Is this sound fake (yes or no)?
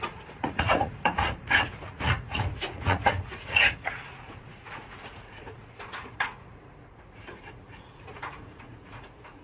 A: yes